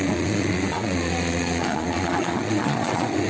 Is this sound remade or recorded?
remade